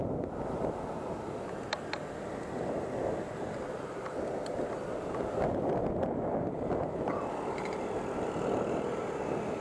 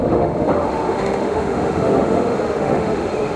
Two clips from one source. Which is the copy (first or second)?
second